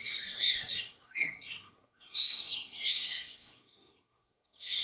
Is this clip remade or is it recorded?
remade